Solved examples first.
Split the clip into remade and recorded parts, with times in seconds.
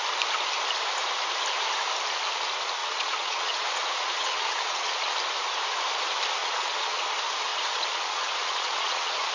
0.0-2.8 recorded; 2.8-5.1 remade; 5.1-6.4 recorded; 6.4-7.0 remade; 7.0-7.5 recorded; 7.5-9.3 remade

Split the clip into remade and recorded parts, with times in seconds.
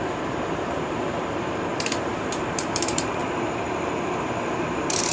0.0-5.1 remade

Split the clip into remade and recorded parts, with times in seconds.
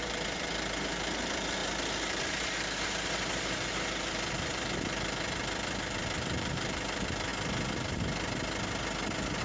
0.0-7.3 remade; 7.3-9.4 recorded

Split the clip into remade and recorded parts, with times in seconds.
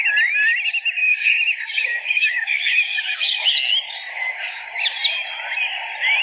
0.0-1.0 recorded; 1.0-3.5 remade; 3.5-4.1 recorded; 4.1-4.7 remade; 4.7-6.2 recorded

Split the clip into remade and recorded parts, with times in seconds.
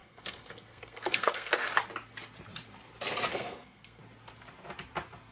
0.0-1.5 remade; 1.5-3.3 recorded; 3.3-4.0 remade; 4.0-5.3 recorded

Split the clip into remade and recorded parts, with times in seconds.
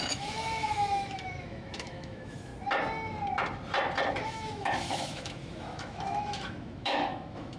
0.0-2.5 remade; 2.5-4.1 recorded; 4.1-7.6 remade